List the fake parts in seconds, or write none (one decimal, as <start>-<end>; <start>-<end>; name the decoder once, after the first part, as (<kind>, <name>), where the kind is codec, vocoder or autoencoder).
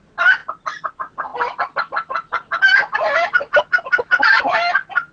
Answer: none